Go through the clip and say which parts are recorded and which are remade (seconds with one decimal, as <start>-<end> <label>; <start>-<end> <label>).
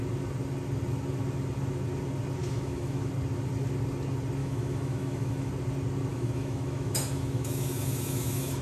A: 0.0-2.4 recorded; 2.4-3.1 remade; 3.1-4.4 recorded; 4.4-5.5 remade; 5.5-6.1 recorded; 6.1-8.6 remade